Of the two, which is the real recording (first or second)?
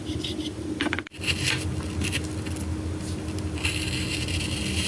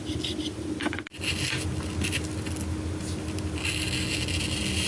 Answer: second